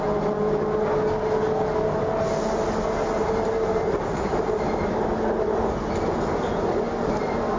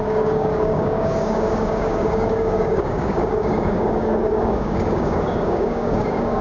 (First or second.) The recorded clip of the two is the first